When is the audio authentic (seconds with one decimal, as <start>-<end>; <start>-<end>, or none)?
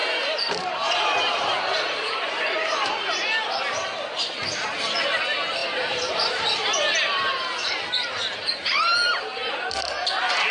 3.6-5.6; 6.4-10.5